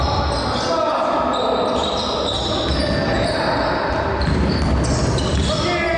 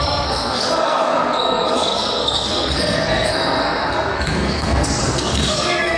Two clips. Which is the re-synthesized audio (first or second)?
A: second